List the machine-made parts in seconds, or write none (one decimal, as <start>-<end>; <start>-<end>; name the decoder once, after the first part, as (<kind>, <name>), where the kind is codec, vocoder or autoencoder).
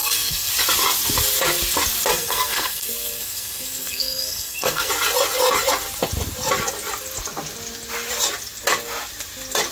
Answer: 0.0-0.5 (codec, SNAC); 2.1-4.9